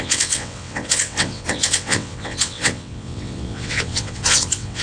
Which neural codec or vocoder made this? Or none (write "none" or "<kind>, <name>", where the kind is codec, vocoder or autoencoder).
vocoder, WaveNeXt